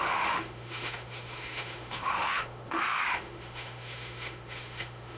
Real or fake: fake